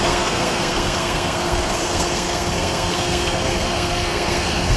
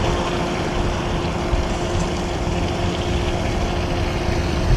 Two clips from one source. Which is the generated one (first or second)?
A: first